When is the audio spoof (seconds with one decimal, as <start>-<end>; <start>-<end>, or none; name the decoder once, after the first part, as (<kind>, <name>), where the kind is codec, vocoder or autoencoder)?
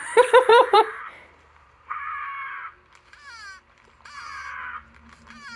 0.5-2.5 (vocoder, BigVGAN v2)